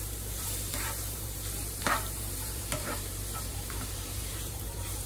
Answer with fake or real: fake